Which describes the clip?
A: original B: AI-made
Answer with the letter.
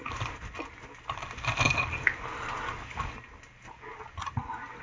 A